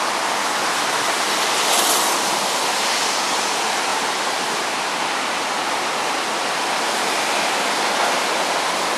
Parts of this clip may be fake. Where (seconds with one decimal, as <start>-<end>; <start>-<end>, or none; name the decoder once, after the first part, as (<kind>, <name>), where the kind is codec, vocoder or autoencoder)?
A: 3.9-5.0 (vocoder, BigVGAN v2)